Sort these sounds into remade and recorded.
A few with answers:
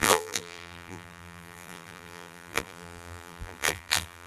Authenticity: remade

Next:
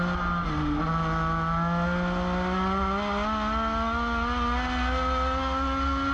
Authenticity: recorded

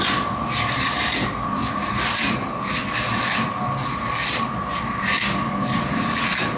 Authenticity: recorded